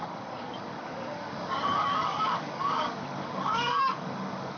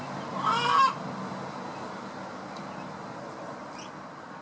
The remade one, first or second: first